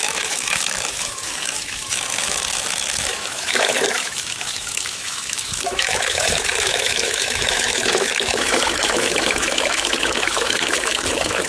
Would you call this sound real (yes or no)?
no